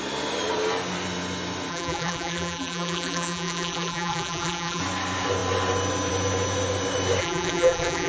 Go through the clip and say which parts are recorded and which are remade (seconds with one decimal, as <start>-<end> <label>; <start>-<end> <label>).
0.0-1.7 recorded; 1.7-4.8 remade; 4.8-7.2 recorded; 7.2-8.1 remade